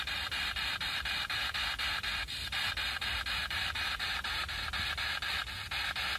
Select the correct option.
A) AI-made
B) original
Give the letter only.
B